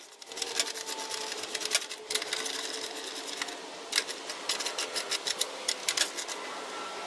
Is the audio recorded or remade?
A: recorded